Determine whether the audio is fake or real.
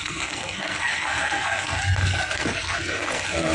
fake